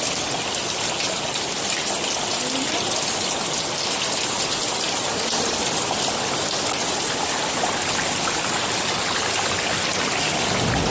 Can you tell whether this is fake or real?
real